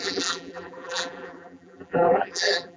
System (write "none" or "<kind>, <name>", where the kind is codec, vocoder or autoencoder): vocoder, BigVGAN v2